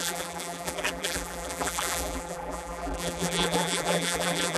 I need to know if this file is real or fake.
fake